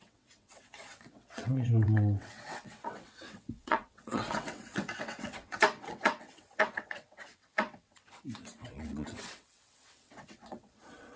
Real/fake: fake